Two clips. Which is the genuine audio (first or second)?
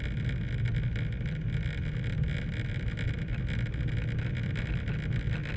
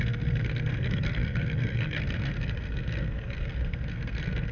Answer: first